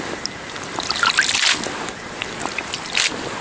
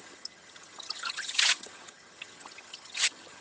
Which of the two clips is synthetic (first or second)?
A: second